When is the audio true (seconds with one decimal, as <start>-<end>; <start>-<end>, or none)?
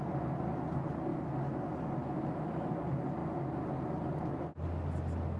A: 0.0-1.1; 1.6-2.0; 2.7-5.4